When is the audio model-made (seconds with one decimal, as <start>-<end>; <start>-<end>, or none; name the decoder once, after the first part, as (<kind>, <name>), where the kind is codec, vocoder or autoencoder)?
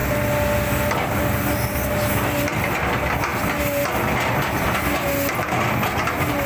none